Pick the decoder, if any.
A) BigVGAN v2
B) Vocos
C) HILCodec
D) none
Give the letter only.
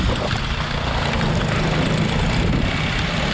D